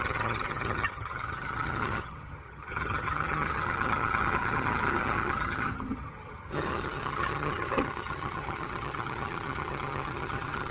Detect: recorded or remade remade